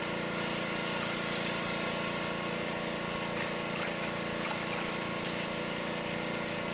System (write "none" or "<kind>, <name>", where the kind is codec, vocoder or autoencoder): none